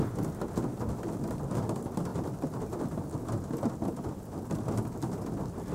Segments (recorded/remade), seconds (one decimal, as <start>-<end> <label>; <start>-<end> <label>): 0.0-5.7 recorded

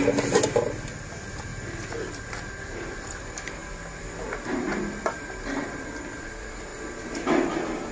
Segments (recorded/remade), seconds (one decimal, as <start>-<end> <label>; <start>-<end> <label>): 0.0-7.9 recorded

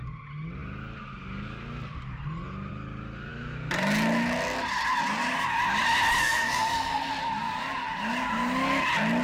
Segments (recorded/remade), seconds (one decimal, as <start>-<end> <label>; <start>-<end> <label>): 0.0-6.2 recorded; 6.2-7.1 remade; 7.1-9.2 recorded

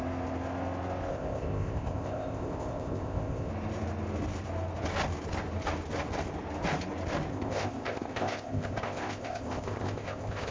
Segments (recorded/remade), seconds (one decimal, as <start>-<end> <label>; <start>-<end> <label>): 0.0-1.1 recorded; 1.1-3.5 remade; 3.5-7.3 recorded; 7.3-10.5 remade

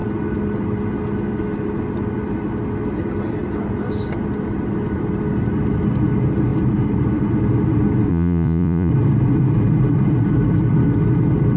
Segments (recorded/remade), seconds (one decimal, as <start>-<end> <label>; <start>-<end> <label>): 0.0-8.1 recorded; 8.1-8.9 remade; 8.9-11.6 recorded